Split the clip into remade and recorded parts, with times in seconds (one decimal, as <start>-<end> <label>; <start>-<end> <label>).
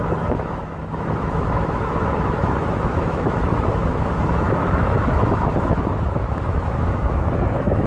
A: 0.0-7.9 remade